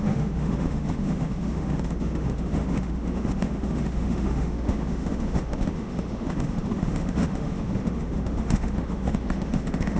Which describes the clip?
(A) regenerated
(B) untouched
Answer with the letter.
A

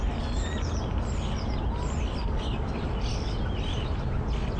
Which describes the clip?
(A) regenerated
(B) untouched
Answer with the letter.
B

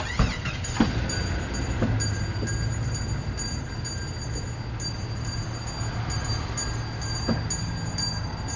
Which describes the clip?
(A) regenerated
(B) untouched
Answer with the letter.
B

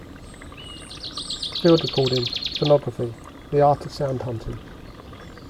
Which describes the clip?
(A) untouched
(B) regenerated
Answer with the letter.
A